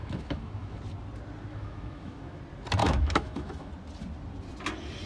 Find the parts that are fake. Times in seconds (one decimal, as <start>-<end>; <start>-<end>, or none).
0.0-0.8; 1.5-2.4; 2.8-3.7